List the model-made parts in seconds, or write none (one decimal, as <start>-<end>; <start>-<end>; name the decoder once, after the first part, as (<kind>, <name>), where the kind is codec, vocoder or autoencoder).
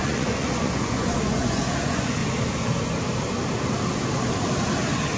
0.0-2.2 (vocoder, Vocos)